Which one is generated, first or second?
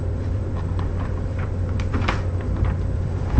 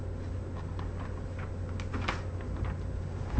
first